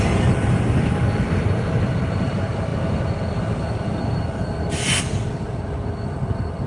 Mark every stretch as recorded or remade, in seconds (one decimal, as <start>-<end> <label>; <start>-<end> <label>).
0.0-6.7 recorded

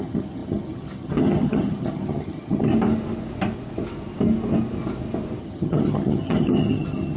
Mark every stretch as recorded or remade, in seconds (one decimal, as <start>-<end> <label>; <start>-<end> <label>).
0.0-2.7 remade; 2.7-5.4 recorded; 5.4-7.2 remade

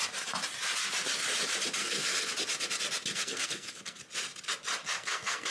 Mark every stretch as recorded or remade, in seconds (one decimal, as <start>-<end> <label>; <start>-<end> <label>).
0.0-1.8 recorded; 1.8-2.3 remade; 2.3-3.1 recorded; 3.1-4.0 remade; 4.0-4.8 recorded; 4.8-5.5 remade

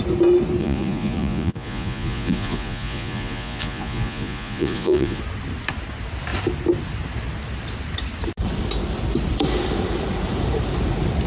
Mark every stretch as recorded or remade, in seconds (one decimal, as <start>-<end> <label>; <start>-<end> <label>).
0.0-0.6 recorded; 0.6-5.2 remade; 5.2-11.3 recorded

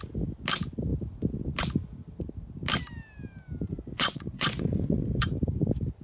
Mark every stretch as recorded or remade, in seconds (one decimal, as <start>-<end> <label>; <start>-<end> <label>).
0.0-3.7 recorded; 3.7-5.2 remade; 5.2-6.0 recorded

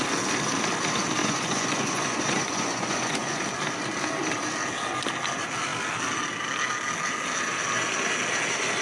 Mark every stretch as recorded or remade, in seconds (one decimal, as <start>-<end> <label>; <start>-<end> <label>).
0.0-1.2 recorded; 1.2-3.4 remade; 3.4-8.8 recorded